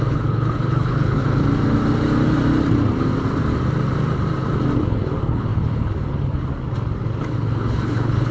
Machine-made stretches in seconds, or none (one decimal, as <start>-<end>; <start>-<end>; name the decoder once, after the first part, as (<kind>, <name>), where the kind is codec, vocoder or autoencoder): 0.0-1.2 (codec, HILCodec); 4.8-6.5; 7.2-8.3